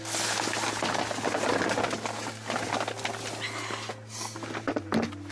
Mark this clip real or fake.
real